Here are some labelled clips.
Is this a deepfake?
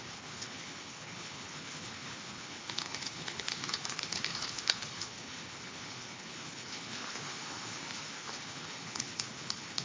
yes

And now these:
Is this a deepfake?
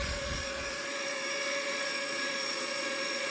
yes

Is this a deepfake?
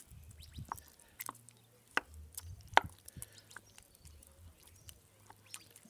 no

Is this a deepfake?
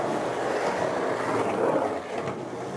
no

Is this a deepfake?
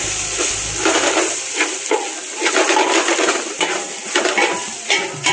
no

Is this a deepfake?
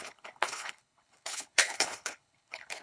yes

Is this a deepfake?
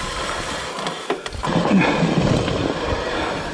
no